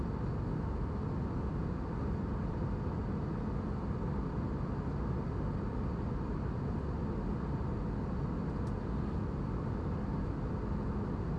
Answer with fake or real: real